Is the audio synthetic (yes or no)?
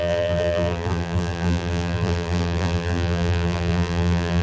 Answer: yes